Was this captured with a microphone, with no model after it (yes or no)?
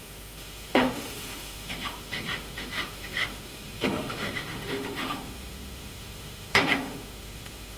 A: no